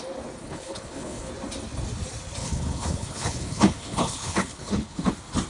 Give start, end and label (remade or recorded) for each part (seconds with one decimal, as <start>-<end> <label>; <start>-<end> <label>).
0.0-0.4 recorded; 0.4-1.3 remade; 1.3-2.4 recorded; 2.4-5.1 remade; 5.1-5.5 recorded